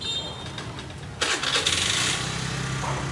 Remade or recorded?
recorded